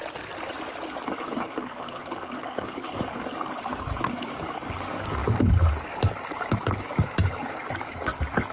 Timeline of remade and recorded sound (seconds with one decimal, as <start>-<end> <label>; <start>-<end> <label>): 0.0-1.0 recorded; 1.0-8.5 remade